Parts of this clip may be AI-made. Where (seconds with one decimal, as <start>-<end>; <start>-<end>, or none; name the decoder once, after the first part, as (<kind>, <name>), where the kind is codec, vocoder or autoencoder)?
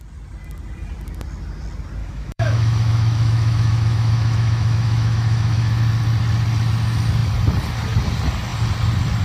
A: 2.0-5.8 (autoencoder, DAC-VAE)